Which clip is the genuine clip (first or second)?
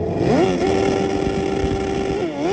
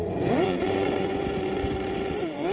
first